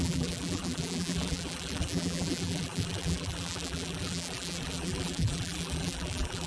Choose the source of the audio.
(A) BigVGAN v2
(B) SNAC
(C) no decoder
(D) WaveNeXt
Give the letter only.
A